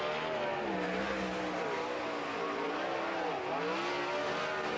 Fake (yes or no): no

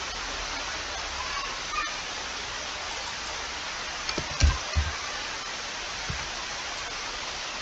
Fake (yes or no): no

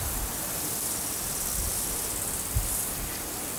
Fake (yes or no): no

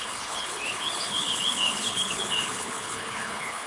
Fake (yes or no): yes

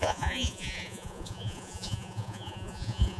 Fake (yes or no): yes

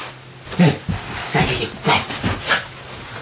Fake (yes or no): no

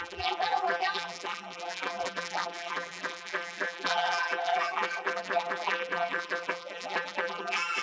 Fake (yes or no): yes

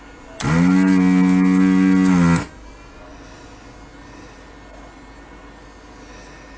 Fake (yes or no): no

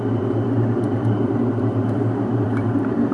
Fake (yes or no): yes